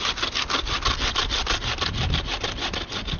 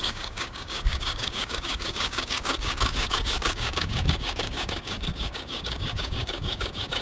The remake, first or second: second